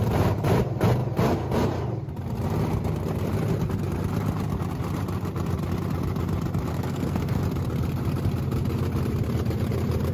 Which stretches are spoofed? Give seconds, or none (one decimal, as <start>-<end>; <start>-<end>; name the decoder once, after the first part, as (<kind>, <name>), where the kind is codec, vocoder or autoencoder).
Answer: 6.7-7.4 (codec, SNAC)